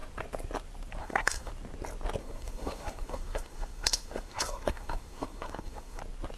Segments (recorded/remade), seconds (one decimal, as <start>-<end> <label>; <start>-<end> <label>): 0.0-1.0 recorded; 1.0-1.5 remade; 1.5-2.2 recorded; 2.2-6.0 remade; 6.0-6.4 recorded

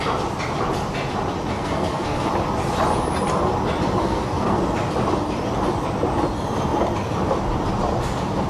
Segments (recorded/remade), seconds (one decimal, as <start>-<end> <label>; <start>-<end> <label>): 0.0-1.5 recorded; 1.5-2.3 remade; 2.3-4.0 recorded; 4.0-4.6 remade; 4.6-8.5 recorded

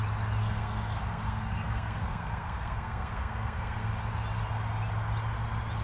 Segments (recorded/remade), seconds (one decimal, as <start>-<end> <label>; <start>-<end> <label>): 0.0-0.4 recorded; 0.4-3.9 remade; 3.9-5.8 recorded

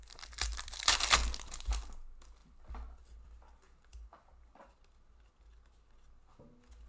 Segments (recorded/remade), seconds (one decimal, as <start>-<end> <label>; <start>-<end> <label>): 0.0-6.9 recorded